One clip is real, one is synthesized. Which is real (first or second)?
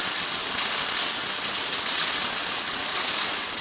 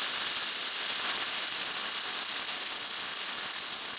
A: second